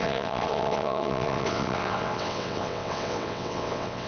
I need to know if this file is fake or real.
fake